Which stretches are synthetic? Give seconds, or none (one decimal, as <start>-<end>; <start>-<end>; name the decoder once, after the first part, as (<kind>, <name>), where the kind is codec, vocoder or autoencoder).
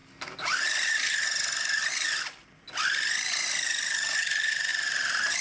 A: none